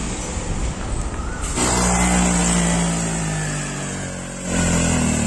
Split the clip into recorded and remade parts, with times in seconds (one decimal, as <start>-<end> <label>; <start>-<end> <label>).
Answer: 0.0-5.3 recorded